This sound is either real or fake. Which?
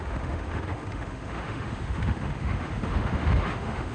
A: fake